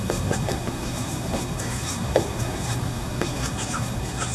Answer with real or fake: fake